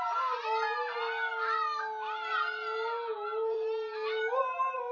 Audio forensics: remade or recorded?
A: recorded